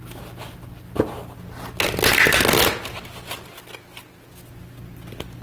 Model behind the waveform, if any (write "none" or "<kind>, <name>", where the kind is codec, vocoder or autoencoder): none